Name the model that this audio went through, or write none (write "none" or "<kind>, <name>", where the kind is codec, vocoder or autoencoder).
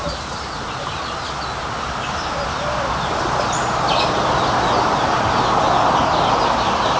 none